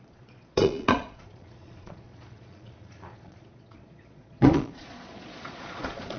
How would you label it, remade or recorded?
remade